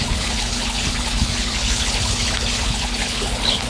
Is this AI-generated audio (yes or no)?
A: yes